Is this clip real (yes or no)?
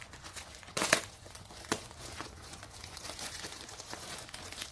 no